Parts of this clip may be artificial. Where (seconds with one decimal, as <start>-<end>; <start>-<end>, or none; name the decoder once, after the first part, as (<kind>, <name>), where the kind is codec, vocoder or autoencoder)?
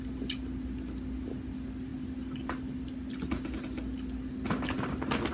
none